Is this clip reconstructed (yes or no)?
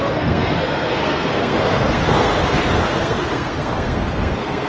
yes